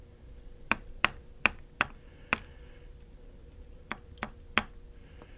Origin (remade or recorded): remade